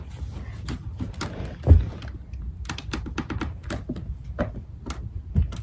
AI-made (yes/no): no